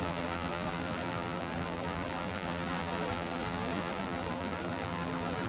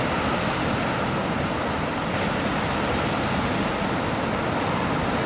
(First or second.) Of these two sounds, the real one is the second